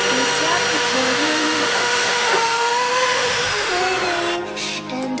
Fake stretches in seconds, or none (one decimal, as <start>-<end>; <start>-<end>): 0.7-3.8